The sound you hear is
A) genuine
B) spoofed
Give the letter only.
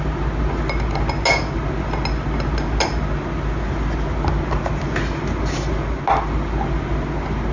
A